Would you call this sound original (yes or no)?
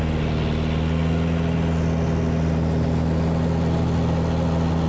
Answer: yes